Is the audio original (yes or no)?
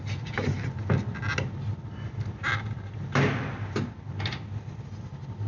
yes